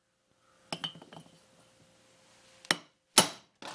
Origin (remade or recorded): recorded